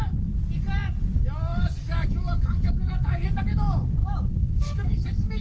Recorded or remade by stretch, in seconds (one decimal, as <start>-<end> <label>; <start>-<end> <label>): 0.0-1.5 recorded; 1.5-3.4 remade; 3.4-4.0 recorded; 4.0-5.4 remade